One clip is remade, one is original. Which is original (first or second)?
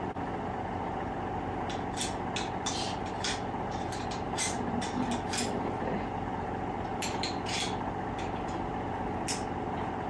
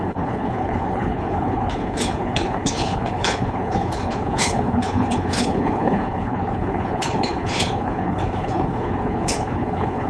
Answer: first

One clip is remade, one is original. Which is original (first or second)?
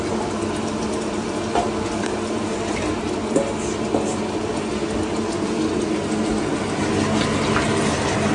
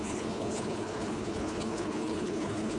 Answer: first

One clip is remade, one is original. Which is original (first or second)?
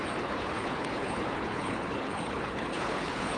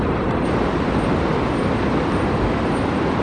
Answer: second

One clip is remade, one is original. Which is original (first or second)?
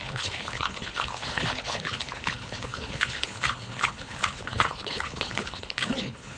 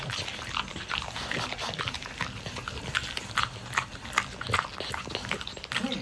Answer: second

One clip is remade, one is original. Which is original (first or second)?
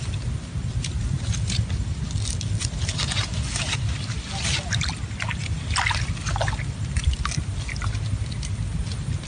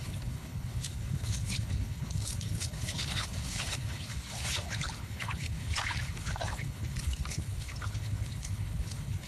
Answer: first